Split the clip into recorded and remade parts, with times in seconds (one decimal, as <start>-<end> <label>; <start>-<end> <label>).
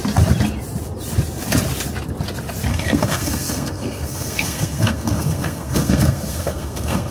0.0-2.7 recorded; 2.7-7.1 remade